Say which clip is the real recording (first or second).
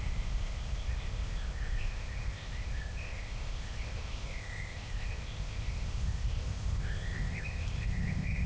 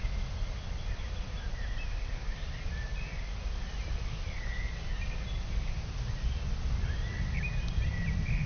second